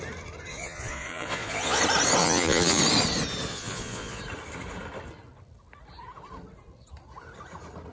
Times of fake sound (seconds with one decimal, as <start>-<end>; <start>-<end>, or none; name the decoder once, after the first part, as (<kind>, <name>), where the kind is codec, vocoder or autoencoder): 0.5-1.8 (vocoder, Vocos); 2.2-2.8; 3.5-4.2